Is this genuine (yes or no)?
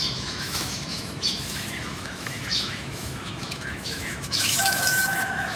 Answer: no